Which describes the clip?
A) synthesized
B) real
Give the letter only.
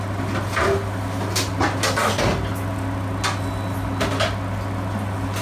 B